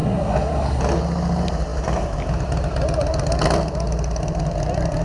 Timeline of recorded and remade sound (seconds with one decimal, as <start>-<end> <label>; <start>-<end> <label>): 0.0-0.8 remade; 0.8-5.0 recorded